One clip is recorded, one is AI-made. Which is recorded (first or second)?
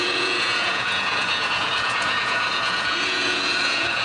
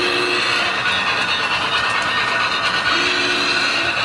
second